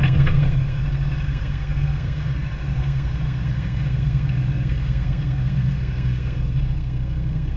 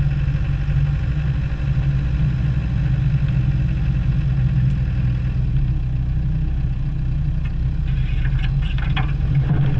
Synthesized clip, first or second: first